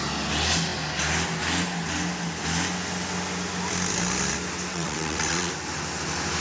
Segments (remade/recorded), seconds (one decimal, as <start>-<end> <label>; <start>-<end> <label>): 0.0-4.7 recorded; 4.7-5.5 remade; 5.5-6.4 recorded